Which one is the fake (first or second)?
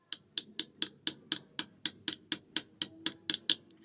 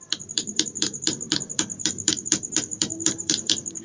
second